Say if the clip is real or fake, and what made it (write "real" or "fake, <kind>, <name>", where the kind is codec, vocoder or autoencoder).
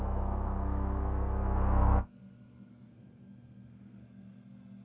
fake, codec, SNAC